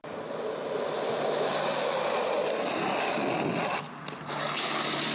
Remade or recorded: recorded